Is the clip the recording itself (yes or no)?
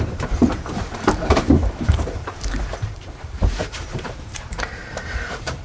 no